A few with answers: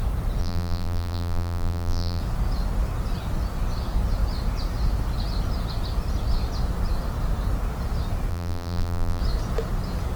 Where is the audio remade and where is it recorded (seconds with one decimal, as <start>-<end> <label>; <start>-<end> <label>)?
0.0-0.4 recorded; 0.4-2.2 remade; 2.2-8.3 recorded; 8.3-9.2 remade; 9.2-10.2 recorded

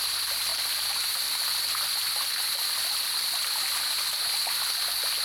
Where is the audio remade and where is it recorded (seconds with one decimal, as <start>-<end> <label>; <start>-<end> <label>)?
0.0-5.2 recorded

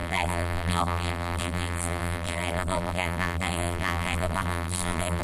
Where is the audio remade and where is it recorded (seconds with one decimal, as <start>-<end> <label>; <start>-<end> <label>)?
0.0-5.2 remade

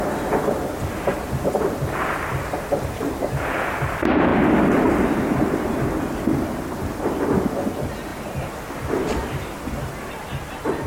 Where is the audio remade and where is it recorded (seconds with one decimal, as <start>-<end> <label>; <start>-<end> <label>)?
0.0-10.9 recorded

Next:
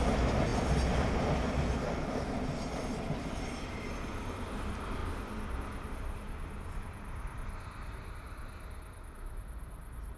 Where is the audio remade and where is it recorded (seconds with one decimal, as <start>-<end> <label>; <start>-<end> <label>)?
0.0-5.0 recorded; 5.0-10.2 remade

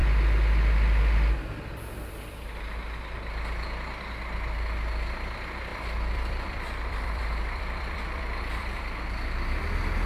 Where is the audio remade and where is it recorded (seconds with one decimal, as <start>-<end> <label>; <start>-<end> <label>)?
0.0-5.7 recorded; 5.7-8.8 remade; 8.8-10.1 recorded